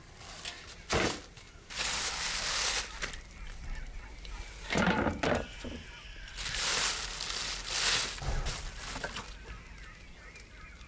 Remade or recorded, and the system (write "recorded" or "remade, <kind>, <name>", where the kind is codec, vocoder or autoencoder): recorded